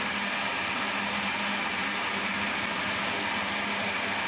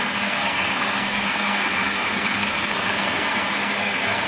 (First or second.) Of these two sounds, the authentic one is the first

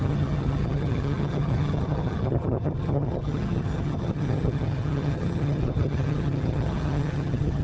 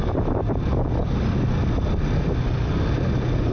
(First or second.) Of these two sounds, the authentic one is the second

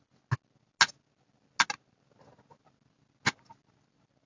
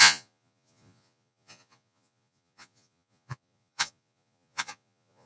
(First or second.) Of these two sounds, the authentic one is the first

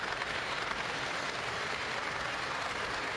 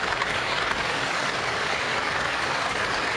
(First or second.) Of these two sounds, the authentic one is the first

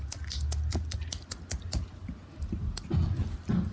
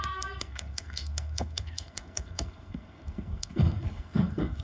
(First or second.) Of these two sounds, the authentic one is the first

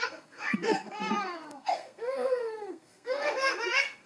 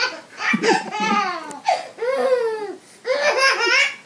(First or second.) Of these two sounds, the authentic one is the second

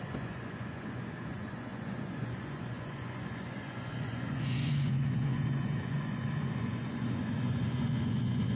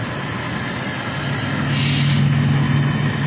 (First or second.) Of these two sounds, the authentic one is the second